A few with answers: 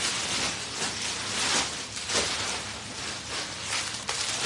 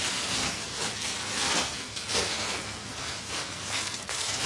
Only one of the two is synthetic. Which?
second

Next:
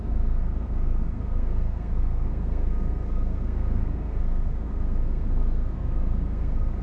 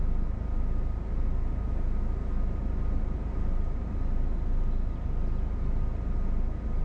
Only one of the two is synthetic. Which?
first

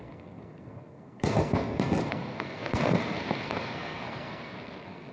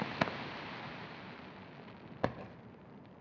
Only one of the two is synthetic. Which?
first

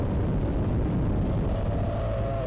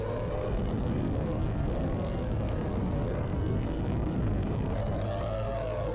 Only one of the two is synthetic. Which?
second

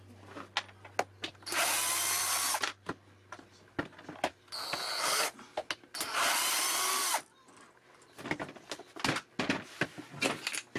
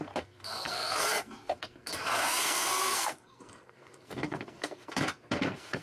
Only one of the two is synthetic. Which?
second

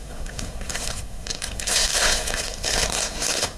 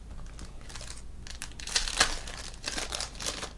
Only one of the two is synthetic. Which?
first